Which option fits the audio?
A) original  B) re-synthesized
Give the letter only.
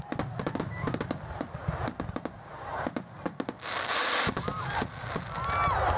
A